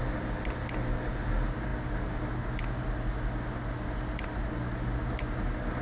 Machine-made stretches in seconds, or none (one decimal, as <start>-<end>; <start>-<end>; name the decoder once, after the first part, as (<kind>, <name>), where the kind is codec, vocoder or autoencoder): none